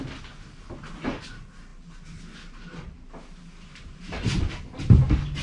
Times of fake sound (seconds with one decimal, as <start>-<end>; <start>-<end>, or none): none